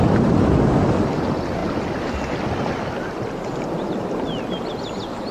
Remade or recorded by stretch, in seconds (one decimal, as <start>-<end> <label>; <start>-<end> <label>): 0.0-5.3 recorded